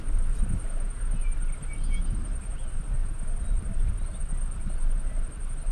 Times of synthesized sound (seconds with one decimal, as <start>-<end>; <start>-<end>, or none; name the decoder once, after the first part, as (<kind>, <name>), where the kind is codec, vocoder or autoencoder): none